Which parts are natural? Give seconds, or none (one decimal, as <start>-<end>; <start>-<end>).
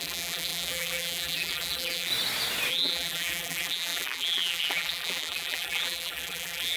2.1-2.7